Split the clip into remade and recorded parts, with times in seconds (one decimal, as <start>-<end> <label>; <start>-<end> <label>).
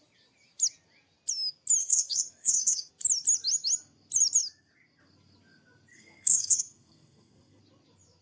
0.0-1.8 recorded; 1.8-2.9 remade; 2.9-5.9 recorded; 5.9-7.6 remade; 7.6-8.2 recorded